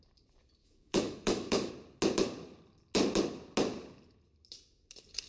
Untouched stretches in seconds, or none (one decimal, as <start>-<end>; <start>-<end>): 0.0-0.6; 1.7-5.3